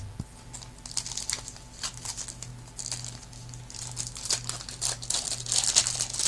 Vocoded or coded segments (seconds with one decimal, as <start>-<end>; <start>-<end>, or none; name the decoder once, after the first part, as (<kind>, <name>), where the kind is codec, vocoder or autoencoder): none